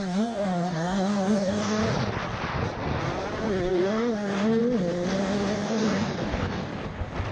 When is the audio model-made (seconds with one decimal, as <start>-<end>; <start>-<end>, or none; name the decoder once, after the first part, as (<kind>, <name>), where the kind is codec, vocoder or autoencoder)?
0.0-1.8 (codec, DAC); 3.7-4.6; 5.2-6.7